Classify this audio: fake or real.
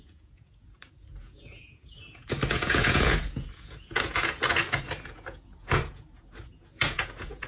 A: fake